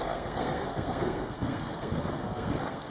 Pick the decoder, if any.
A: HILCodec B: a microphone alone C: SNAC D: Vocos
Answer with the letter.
C